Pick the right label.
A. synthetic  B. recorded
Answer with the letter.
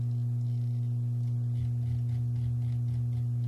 B